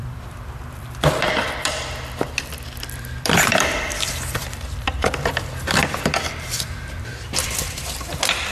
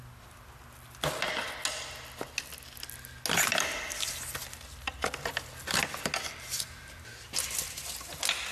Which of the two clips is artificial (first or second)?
first